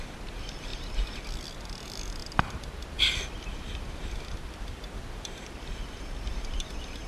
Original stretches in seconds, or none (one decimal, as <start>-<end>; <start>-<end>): 0.0-0.7; 1.2-2.2; 6.0-7.1